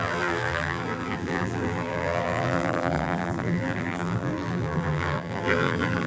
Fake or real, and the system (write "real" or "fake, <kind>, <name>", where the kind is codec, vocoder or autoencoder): fake, vocoder, BigVGAN v2